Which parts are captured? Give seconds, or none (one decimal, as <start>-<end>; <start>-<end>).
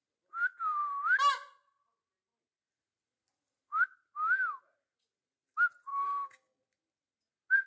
0.0-5.9; 6.6-7.7